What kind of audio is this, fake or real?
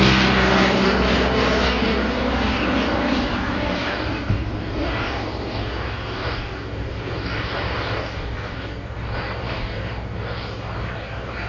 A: fake